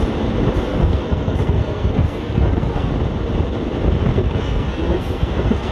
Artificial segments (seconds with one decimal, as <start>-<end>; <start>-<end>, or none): 0.7-2.9; 4.1-5.7